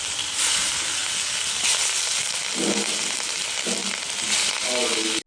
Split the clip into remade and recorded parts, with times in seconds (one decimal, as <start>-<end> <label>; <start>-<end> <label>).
0.0-1.0 remade; 1.0-3.4 recorded; 3.4-3.8 remade; 3.8-5.3 recorded